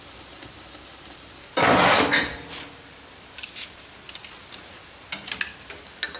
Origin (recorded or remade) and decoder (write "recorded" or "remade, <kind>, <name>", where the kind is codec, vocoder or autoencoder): recorded